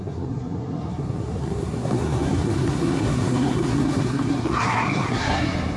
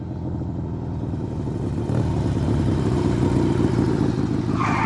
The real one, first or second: second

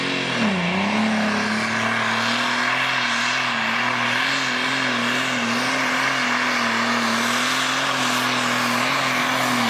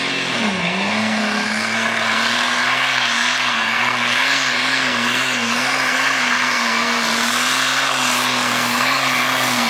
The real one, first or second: first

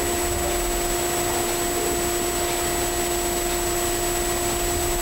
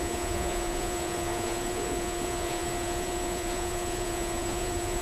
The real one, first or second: first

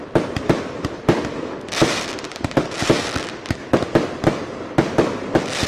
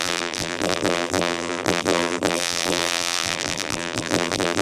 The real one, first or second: first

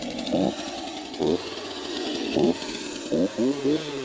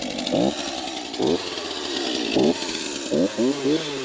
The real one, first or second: second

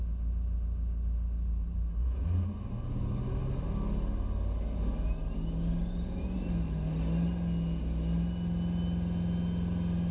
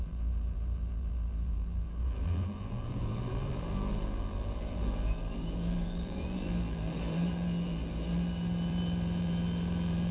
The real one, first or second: first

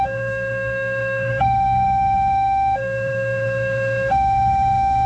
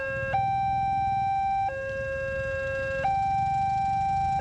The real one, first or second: second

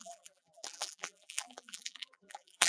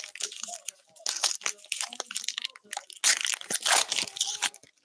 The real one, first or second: second